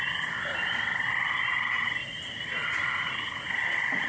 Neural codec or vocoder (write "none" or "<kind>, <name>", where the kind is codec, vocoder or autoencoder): none